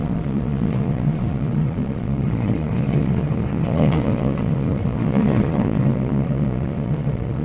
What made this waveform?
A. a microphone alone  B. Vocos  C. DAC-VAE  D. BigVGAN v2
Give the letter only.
B